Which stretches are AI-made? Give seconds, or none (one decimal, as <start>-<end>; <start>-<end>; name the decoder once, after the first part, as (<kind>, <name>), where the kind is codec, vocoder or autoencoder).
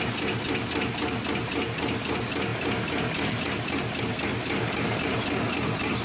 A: none